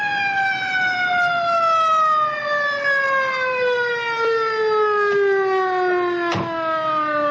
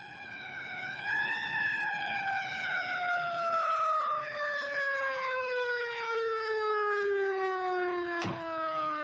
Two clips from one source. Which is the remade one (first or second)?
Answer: second